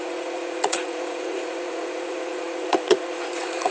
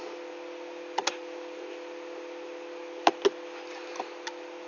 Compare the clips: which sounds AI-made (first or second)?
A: first